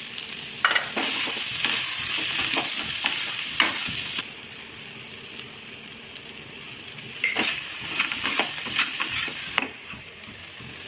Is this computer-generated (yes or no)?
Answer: no